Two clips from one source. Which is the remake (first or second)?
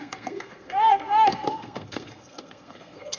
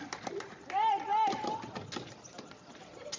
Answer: first